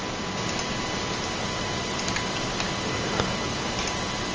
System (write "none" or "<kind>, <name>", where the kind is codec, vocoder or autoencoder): none